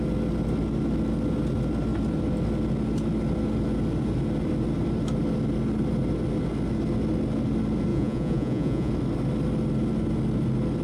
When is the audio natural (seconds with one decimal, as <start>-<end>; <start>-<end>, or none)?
0.0-7.9; 8.9-10.8